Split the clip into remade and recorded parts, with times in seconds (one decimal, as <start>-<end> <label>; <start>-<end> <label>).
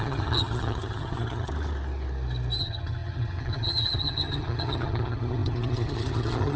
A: 0.0-1.5 remade; 1.5-2.6 recorded; 2.6-6.6 remade